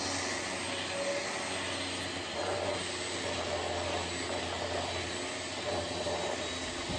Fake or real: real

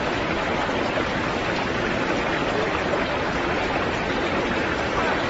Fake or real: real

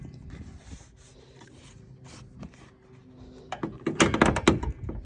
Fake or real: real